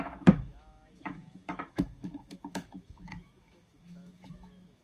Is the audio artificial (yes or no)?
yes